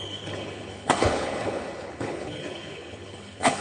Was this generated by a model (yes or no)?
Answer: yes